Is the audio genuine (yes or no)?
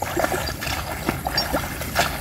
yes